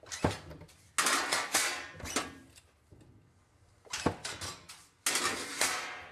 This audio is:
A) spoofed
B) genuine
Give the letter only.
B